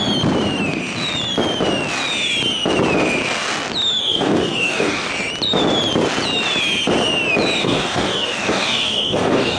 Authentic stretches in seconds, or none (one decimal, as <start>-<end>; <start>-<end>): 0.0-4.0; 5.1-7.6